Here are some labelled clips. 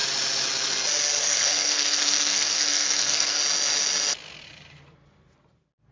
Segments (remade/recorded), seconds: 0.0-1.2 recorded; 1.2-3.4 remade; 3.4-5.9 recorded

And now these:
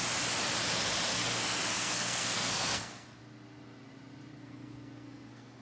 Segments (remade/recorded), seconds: 0.0-1.1 recorded; 1.1-3.2 remade; 3.2-4.3 recorded; 4.3-5.6 remade

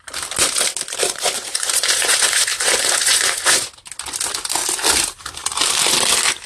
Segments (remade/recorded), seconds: 0.0-1.0 recorded; 1.0-3.7 remade; 3.7-6.5 recorded

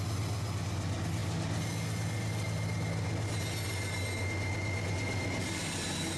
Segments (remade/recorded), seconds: 0.0-6.2 recorded

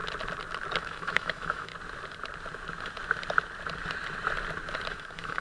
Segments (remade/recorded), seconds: 0.0-0.8 recorded; 0.8-1.7 remade; 1.7-4.9 recorded; 4.9-5.4 remade

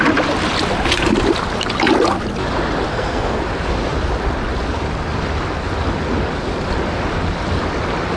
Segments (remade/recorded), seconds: 0.0-2.9 recorded; 2.9-3.4 remade; 3.4-8.2 recorded

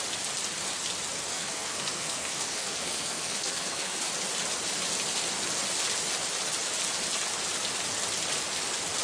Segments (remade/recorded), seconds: 0.0-1.3 recorded; 1.3-4.0 remade; 4.0-9.0 recorded